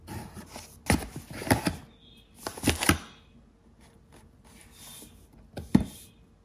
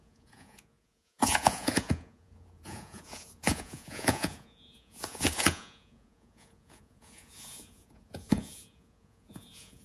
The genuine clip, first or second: first